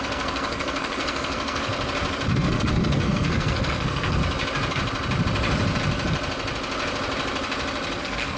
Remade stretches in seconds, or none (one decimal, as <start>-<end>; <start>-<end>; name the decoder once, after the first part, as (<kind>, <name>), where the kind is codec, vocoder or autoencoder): 0.0-1.7 (codec, SNAC); 2.3-4.2; 8.0-8.4

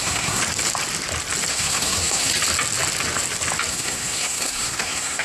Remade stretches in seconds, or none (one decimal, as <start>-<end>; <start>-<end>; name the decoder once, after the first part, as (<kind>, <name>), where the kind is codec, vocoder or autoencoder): 0.0-0.4 (codec, SNAC); 1.5-2.3; 3.7-5.2

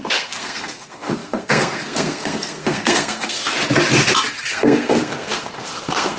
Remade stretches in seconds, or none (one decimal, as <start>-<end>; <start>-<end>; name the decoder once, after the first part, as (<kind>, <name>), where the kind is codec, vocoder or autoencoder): 0.0-3.4 (codec, SNAC); 4.4-6.2

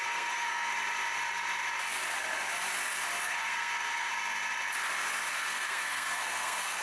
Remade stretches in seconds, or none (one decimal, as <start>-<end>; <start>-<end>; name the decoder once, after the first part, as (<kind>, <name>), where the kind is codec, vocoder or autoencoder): 0.0-0.7 (codec, SNAC); 3.2-4.1; 5.3-6.8

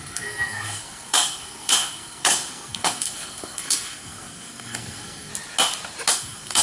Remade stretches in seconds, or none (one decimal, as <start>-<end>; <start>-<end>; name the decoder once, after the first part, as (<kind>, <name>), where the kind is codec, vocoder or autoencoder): 0.0-5.3 (codec, SNAC); 6.1-6.6